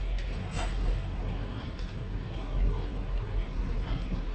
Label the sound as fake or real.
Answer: fake